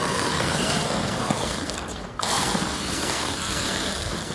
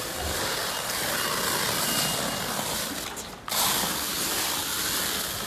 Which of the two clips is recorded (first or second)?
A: second